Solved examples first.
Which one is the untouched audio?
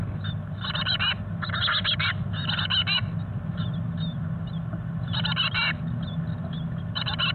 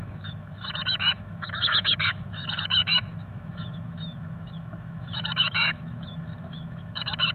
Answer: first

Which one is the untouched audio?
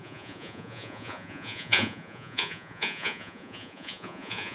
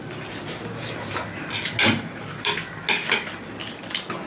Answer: second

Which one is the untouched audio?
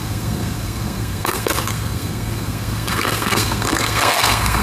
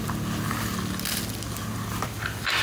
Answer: second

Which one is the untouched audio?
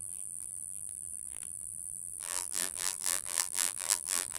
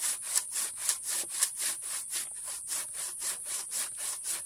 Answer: second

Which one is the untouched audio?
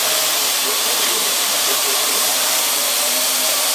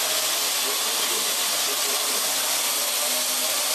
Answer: second